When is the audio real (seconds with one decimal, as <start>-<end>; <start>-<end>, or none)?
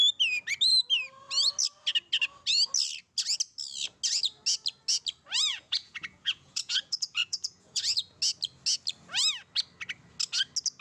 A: 0.0-5.5; 8.2-10.8